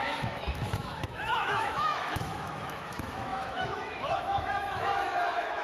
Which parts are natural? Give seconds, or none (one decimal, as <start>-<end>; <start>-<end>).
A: none